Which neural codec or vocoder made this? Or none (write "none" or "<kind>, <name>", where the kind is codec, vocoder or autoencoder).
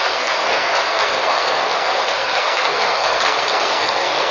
codec, SNAC